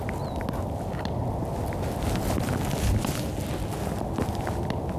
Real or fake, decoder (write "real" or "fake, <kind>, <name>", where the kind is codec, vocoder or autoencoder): real